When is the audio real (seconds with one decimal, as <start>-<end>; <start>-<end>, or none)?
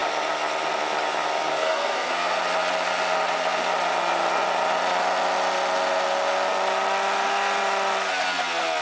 0.0-1.5; 2.4-8.8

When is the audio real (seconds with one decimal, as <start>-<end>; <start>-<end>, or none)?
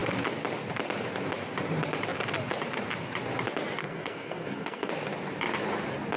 0.0-3.8; 4.9-6.2